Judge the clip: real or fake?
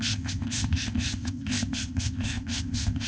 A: fake